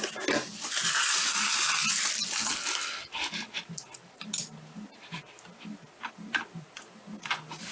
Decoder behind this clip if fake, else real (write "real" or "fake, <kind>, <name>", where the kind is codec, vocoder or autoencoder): real